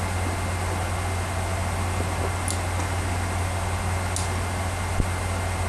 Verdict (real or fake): real